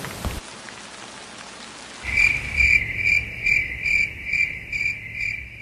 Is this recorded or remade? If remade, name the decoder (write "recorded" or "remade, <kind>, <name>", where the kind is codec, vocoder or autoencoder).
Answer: recorded